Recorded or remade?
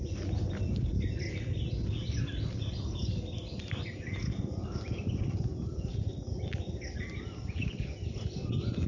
recorded